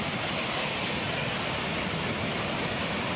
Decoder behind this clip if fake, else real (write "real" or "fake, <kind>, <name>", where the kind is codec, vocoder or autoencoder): real